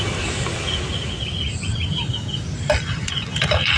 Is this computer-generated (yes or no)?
no